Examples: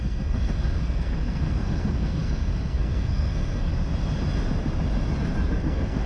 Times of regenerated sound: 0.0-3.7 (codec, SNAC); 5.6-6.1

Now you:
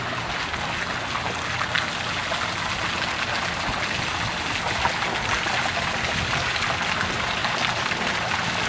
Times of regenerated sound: none